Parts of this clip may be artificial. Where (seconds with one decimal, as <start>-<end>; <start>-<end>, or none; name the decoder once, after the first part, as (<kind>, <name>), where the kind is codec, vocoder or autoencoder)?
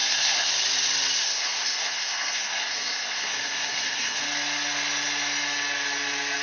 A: 0.0-0.5 (codec, SNAC); 1.2-4.2